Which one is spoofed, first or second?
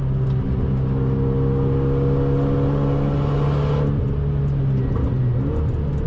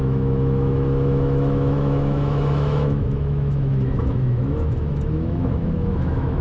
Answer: second